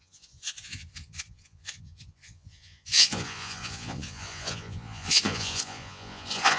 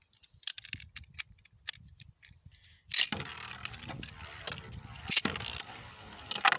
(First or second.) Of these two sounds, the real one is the second